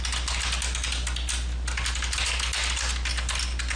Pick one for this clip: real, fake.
real